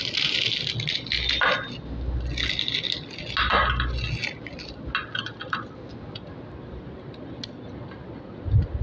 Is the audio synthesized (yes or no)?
no